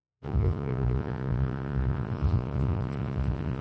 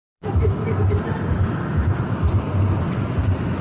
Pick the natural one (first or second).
second